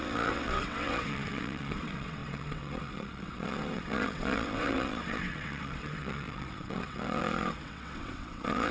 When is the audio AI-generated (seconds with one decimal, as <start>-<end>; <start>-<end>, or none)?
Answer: 0.0-8.7